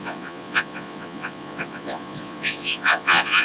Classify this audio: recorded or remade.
remade